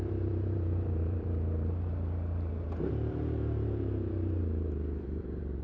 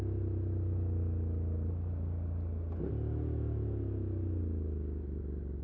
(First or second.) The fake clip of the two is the first